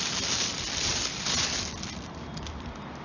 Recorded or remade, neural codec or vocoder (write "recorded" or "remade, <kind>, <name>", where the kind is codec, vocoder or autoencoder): recorded